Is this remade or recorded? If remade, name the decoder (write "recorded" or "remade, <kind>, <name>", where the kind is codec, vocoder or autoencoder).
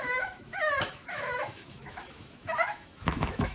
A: remade, autoencoder, DAC-VAE